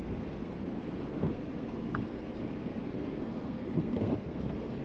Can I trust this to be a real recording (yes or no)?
no